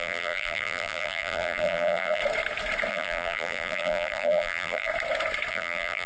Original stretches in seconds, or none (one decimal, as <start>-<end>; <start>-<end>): 2.2-2.9; 4.9-5.5